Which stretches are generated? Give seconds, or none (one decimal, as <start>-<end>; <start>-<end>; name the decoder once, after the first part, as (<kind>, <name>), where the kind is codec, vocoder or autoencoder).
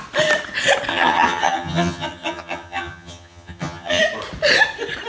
0.9-4.0 (vocoder, HiFi-GAN)